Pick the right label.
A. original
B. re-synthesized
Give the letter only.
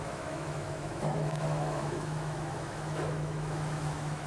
B